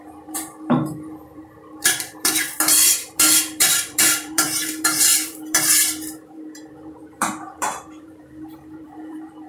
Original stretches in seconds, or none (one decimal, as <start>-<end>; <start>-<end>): none